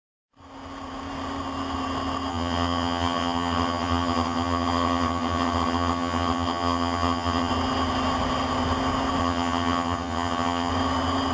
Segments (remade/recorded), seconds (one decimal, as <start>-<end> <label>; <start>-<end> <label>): 0.0-2.3 recorded; 2.3-7.5 remade; 7.5-9.2 recorded; 9.2-10.7 remade; 10.7-11.3 recorded